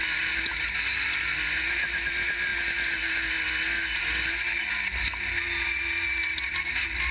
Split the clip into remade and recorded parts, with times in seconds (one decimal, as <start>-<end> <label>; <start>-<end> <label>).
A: 0.0-7.1 recorded